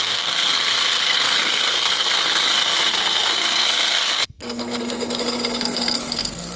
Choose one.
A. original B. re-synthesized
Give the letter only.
B